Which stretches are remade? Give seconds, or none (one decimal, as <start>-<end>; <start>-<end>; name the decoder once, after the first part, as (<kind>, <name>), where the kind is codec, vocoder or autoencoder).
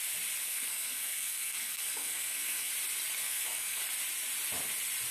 0.4-2.7 (codec, SNAC); 3.2-3.8